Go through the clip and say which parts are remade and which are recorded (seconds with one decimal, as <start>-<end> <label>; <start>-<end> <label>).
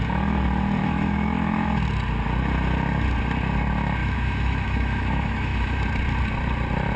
0.0-0.8 recorded; 0.8-1.8 remade; 1.8-4.0 recorded; 4.0-5.8 remade; 5.8-7.0 recorded